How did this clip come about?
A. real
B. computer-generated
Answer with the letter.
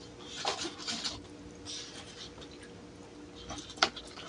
A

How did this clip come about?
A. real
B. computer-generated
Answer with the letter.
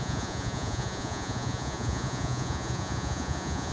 B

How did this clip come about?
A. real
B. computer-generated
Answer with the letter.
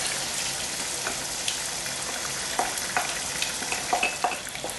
A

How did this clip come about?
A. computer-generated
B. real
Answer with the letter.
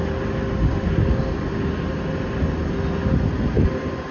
B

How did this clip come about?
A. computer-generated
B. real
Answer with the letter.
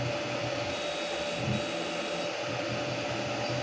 B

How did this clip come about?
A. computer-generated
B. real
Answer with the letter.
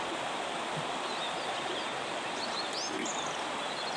B